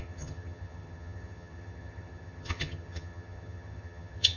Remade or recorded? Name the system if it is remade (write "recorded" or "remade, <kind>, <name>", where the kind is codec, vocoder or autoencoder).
remade, vocoder, HiFi-GAN